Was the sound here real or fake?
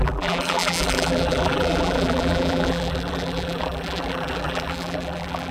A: fake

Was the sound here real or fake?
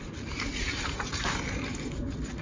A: fake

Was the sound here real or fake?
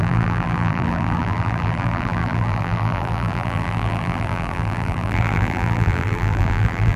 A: fake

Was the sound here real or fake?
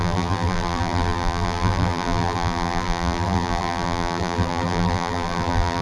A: fake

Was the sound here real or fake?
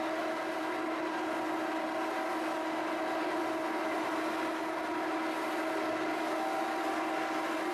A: real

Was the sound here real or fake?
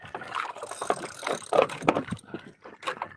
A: real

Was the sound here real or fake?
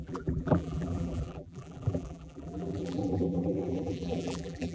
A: fake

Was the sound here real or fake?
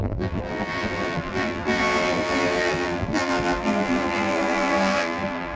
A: fake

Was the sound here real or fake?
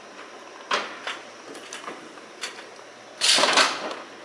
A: fake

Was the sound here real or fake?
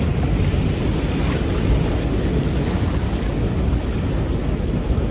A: real